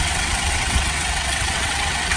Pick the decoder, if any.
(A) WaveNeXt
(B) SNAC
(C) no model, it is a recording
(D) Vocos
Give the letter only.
A